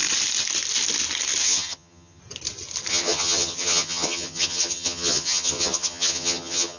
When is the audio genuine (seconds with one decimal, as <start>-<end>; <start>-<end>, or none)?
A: 0.0-1.4; 2.2-2.9